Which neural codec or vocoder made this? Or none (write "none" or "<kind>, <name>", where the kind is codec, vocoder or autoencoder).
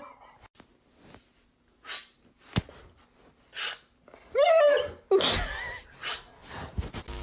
none